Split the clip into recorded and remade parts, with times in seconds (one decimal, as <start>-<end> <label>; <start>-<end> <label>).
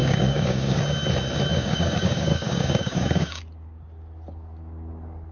0.0-0.8 remade; 0.8-1.5 recorded; 1.5-3.4 remade; 3.4-5.3 recorded